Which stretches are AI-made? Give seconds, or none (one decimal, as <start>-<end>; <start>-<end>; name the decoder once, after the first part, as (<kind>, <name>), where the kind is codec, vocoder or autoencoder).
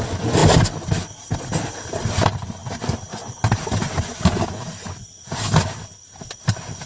none